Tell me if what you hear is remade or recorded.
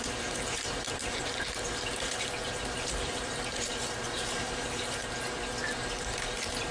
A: remade